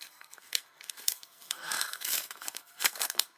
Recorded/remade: remade